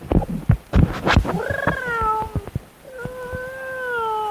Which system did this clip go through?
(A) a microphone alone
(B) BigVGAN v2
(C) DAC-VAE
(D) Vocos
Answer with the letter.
A